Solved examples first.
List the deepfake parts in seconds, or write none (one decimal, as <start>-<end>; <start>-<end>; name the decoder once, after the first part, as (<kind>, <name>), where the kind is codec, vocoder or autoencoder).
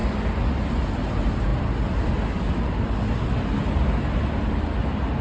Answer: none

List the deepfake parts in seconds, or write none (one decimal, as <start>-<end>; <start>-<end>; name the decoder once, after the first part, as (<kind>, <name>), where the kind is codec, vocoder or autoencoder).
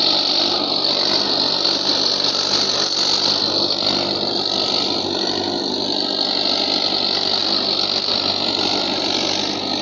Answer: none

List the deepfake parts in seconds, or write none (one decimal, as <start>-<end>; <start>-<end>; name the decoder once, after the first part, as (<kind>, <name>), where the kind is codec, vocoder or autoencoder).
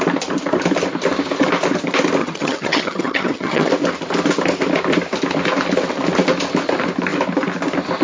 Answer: 2.2-3.7 (vocoder, HiFi-GAN)